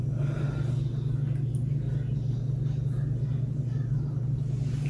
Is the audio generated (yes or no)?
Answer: no